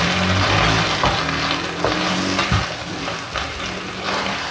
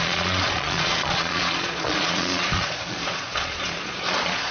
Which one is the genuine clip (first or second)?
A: first